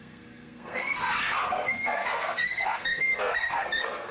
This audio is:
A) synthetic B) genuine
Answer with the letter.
A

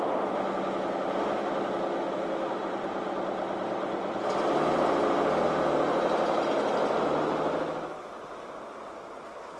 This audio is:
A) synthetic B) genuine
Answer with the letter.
B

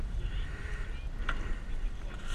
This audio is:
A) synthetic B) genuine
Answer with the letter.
B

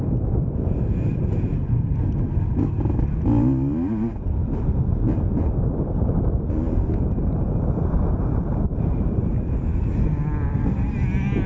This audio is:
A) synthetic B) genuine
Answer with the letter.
B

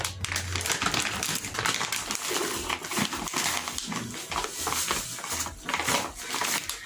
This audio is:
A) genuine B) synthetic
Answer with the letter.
A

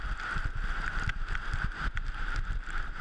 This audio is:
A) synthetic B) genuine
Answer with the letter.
B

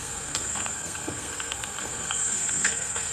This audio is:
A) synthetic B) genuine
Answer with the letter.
A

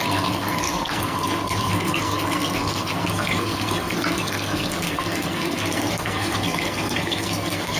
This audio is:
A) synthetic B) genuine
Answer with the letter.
A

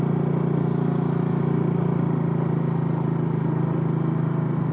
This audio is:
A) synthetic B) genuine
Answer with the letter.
B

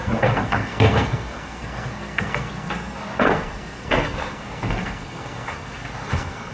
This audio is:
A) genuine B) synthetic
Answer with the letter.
B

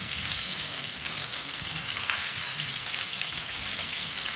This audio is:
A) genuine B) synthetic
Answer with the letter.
B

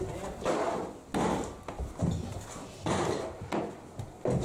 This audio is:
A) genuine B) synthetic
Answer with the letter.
A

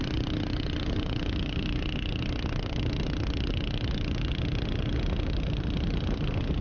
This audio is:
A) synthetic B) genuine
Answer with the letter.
B